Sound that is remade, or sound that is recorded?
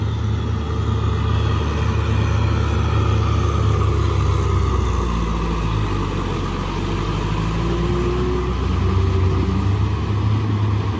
recorded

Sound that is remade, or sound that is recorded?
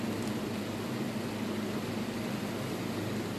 recorded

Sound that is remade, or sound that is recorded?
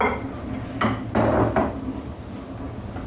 recorded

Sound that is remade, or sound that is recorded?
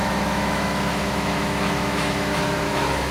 remade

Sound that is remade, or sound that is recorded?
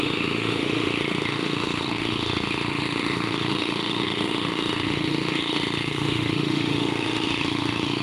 remade